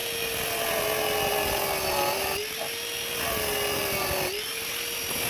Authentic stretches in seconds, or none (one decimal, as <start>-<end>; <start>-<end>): 0.0-5.3